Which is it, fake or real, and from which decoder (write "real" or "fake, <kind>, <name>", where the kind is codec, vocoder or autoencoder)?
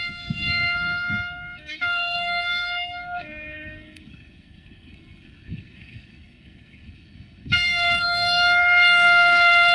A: fake, codec, SNAC